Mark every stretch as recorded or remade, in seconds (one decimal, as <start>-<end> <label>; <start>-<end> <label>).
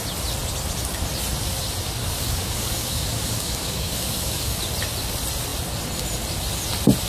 0.0-2.0 recorded; 2.0-4.6 remade; 4.6-7.1 recorded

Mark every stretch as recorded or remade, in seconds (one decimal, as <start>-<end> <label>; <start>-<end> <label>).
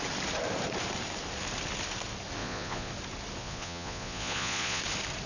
0.0-2.4 recorded; 2.4-2.9 remade; 2.9-3.4 recorded; 3.4-4.8 remade; 4.8-5.3 recorded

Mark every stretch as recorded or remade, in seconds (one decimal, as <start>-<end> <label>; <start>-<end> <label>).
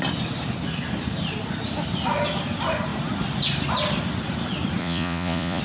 0.0-4.8 recorded; 4.8-5.6 remade